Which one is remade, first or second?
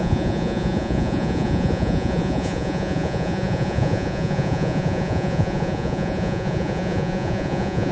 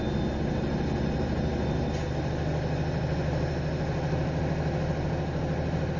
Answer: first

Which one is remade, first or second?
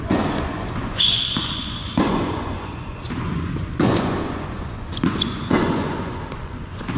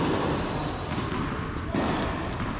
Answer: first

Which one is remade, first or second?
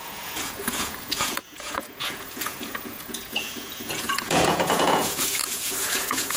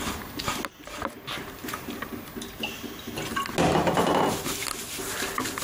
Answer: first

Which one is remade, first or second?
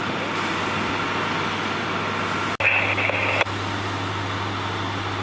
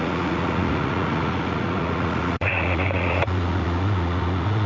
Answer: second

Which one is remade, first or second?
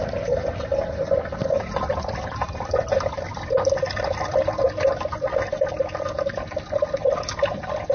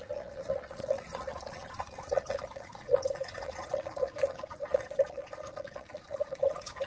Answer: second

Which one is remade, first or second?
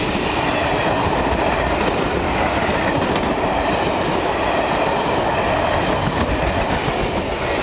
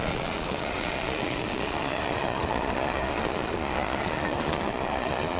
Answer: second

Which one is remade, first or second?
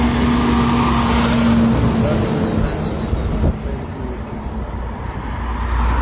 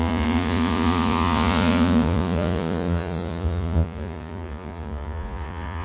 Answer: second